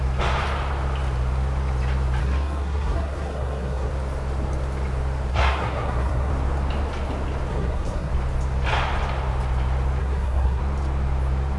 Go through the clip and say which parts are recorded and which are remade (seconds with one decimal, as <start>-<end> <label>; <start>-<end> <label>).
0.0-2.2 recorded; 2.2-3.9 remade; 3.9-5.3 recorded; 5.3-6.3 remade; 6.3-7.5 recorded; 7.5-8.1 remade; 8.1-10.0 recorded; 10.0-10.6 remade; 10.6-11.6 recorded